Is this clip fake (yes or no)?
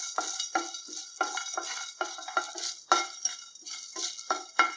no